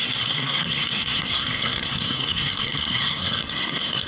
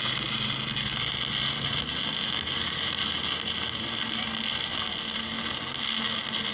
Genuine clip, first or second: second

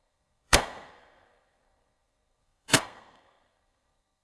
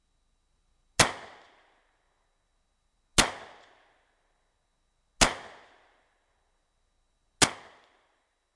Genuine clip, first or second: second